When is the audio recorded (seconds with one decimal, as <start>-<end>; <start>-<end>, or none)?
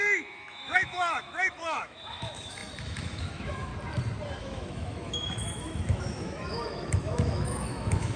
3.7-4.4